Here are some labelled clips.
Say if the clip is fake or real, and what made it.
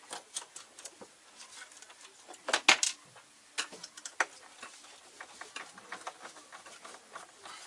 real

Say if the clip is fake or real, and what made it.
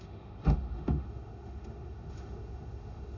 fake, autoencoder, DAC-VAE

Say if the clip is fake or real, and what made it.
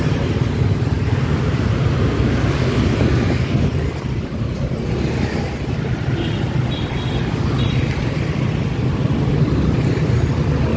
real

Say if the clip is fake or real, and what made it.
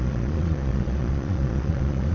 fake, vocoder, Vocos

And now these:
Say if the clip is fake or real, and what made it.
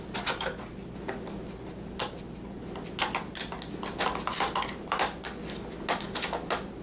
real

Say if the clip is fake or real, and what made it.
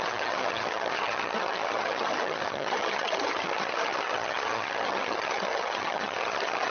fake, vocoder, HiFi-GAN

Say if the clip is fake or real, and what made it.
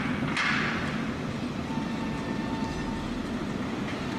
real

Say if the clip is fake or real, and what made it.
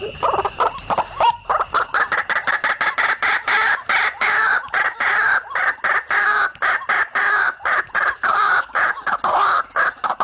fake, vocoder, BigVGAN v2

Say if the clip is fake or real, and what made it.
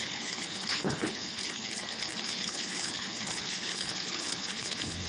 fake, codec, HILCodec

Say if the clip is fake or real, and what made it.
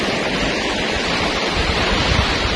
real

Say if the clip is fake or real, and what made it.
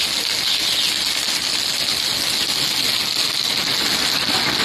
real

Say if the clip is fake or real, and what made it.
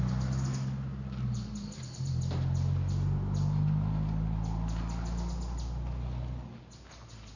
real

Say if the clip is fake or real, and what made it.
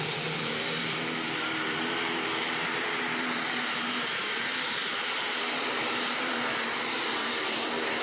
fake, vocoder, BigVGAN v2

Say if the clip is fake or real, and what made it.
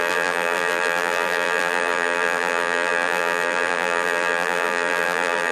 fake, vocoder, BigVGAN v2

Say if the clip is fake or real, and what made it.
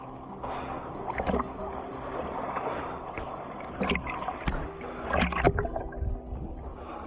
real